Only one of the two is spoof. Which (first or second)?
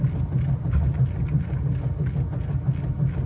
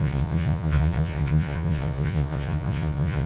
second